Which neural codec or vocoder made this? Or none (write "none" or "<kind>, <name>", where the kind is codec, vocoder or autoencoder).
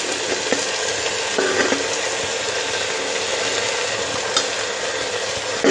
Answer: none